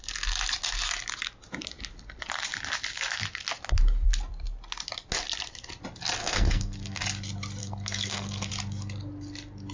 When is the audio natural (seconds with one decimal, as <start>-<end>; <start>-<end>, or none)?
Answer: 0.0-6.2; 7.0-7.6; 8.5-9.7